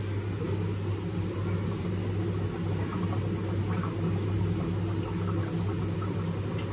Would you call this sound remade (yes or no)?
no